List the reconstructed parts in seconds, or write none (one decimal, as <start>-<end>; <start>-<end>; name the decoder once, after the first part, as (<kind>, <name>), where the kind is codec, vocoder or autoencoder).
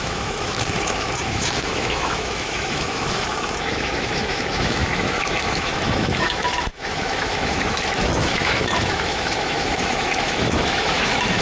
0.0-11.4 (autoencoder, DAC-VAE)